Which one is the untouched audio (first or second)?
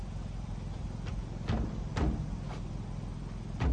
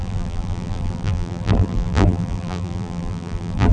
first